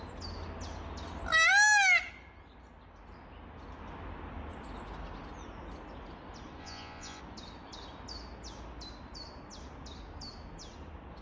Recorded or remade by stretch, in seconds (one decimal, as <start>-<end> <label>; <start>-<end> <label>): 0.0-6.6 recorded; 6.6-7.2 remade; 7.2-11.2 recorded